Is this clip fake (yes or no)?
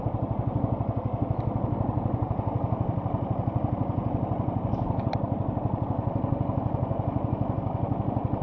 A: no